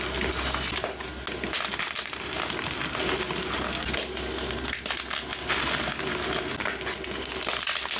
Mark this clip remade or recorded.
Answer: recorded